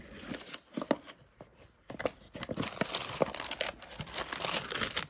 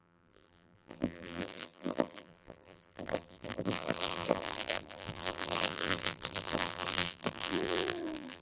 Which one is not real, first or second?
second